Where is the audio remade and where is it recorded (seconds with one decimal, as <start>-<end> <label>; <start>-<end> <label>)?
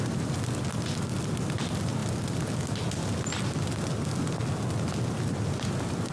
0.0-6.1 recorded